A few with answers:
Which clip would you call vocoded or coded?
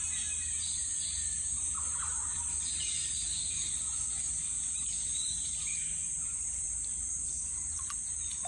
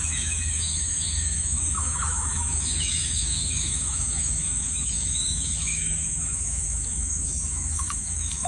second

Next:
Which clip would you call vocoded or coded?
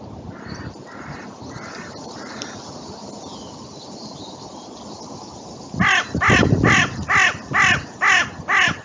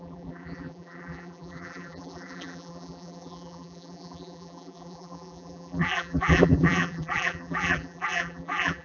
second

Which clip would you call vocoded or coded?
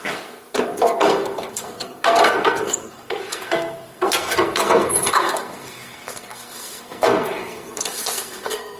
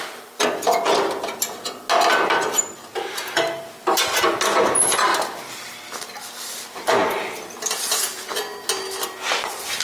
first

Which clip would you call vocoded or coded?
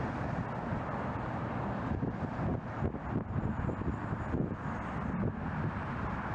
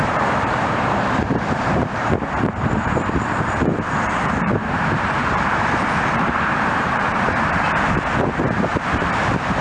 second